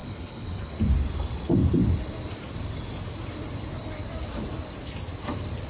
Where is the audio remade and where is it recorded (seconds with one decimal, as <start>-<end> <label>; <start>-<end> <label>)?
0.0-0.7 remade; 0.7-5.7 recorded